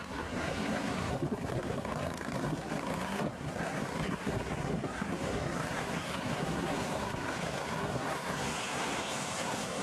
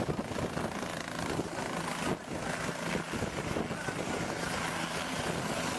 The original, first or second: second